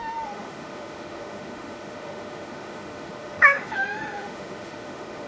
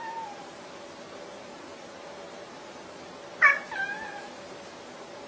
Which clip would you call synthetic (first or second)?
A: first